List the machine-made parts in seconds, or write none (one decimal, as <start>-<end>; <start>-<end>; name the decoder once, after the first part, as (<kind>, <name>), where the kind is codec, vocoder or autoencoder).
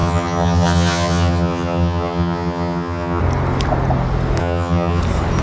0.0-3.2 (vocoder, HiFi-GAN); 4.4-5.0